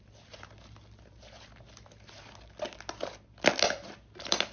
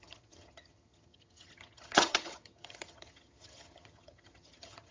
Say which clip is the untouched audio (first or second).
first